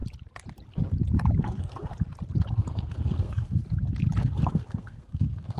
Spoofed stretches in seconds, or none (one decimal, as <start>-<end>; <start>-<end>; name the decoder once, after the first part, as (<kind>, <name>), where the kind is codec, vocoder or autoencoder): 1.4-1.9 (codec, SNAC); 2.5-3.6; 4.2-5.6